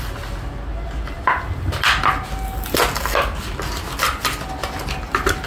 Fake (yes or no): no